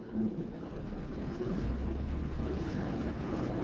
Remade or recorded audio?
remade